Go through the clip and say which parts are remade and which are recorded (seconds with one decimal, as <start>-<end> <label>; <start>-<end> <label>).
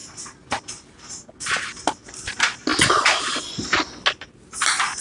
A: 0.0-5.0 recorded